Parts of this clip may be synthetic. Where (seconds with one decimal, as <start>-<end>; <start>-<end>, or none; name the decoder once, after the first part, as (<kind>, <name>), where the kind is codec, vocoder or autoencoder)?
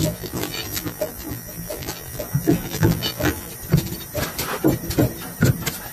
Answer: 0.0-3.5 (vocoder, BigVGAN v2)